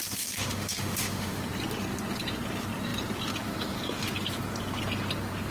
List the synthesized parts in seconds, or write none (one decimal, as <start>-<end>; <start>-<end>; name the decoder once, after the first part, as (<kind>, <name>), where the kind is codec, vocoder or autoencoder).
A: 0.0-1.4 (autoencoder, DAC-VAE)